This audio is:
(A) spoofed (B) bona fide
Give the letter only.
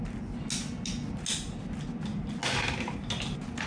B